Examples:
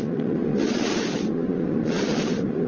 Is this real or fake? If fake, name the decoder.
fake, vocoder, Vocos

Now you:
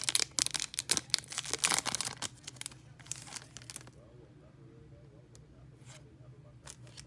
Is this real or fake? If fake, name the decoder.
real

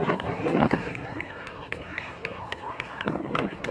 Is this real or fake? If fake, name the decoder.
fake, codec, SNAC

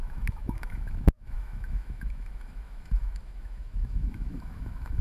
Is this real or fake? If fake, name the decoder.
fake, autoencoder, DAC-VAE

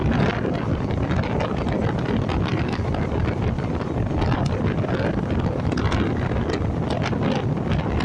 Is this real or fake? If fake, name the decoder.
real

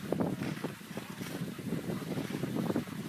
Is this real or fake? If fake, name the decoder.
real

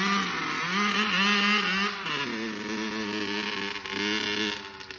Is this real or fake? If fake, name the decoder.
real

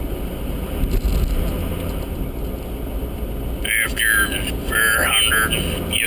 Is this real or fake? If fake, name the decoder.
real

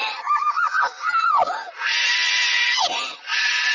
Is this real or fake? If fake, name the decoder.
real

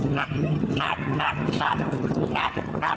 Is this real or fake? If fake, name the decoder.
fake, vocoder, HiFi-GAN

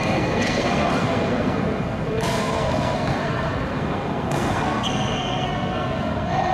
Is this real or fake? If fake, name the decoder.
fake, codec, SNAC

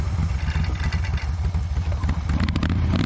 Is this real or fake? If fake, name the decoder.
real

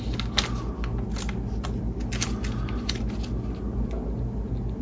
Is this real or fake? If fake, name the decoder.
real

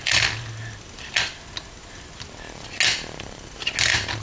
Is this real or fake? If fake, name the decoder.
real